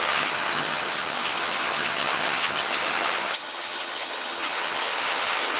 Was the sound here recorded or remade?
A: remade